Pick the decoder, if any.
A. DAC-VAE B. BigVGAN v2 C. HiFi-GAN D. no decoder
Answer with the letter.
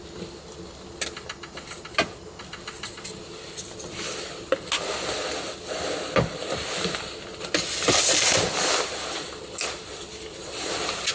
D